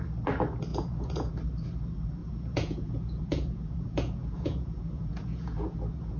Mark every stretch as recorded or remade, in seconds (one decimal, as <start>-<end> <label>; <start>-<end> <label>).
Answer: 0.0-0.7 recorded; 0.7-1.3 remade; 1.3-2.2 recorded; 2.2-6.2 remade